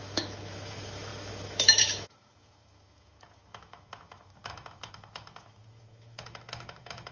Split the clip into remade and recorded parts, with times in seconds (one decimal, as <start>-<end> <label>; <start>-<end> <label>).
0.0-7.1 remade